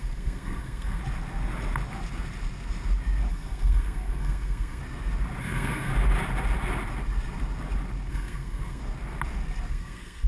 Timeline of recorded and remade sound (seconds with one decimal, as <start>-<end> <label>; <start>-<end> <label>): 0.0-1.0 remade; 1.0-3.3 recorded; 3.3-4.8 remade; 4.8-5.4 recorded; 5.4-5.9 remade; 5.9-8.1 recorded; 8.1-8.8 remade; 8.8-9.7 recorded; 9.7-10.3 remade